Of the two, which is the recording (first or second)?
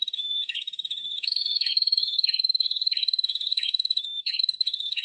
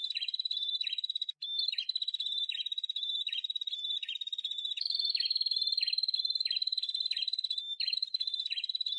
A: second